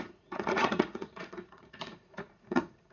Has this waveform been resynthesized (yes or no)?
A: yes